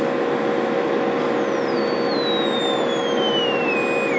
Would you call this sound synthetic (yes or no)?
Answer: no